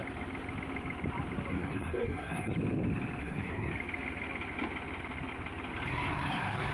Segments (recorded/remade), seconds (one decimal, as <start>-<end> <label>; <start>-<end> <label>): 0.0-1.5 recorded; 1.5-2.5 remade; 2.5-3.2 recorded; 3.2-3.7 remade; 3.7-5.9 recorded; 5.9-6.7 remade